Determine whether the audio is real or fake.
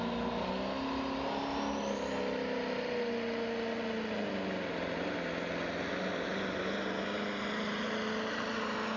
real